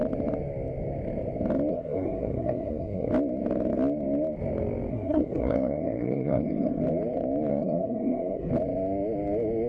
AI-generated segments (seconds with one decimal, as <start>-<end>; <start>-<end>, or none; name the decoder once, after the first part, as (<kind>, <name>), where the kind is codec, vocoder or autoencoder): 1.7-3.1 (codec, SNAC); 4.9-6.8; 7.5-8.5